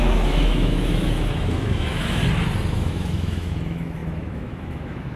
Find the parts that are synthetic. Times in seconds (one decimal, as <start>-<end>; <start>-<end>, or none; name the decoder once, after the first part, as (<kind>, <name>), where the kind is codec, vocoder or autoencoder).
0.0-2.2 (autoencoder, DAC-VAE); 2.7-5.2